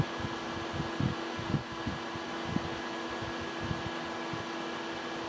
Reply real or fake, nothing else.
real